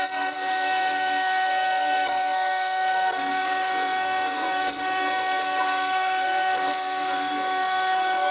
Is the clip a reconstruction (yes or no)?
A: yes